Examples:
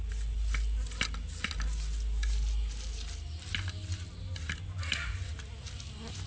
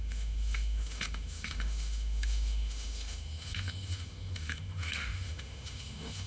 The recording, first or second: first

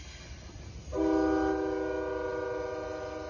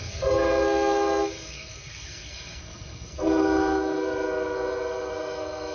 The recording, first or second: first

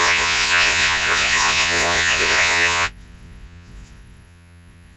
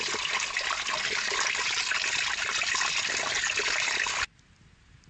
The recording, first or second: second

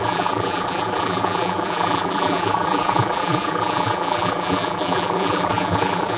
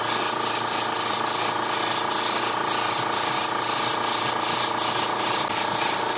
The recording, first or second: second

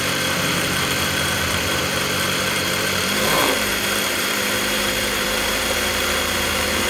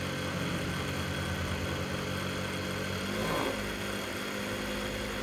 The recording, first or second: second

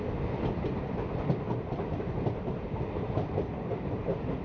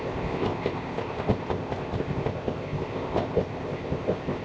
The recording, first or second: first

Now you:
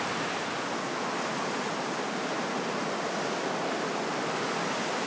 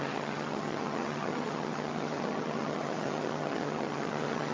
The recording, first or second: first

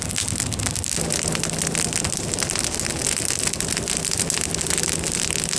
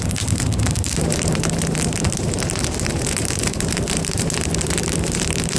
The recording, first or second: first